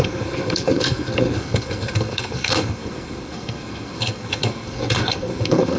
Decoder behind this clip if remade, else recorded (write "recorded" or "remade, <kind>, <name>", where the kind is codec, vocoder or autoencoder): remade, codec, SNAC